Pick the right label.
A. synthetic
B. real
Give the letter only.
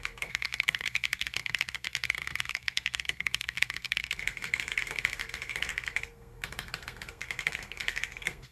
A